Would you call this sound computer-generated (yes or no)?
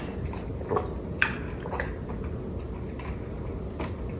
no